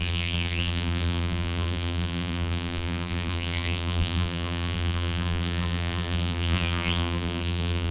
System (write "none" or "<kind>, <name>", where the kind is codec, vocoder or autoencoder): vocoder, BigVGAN v2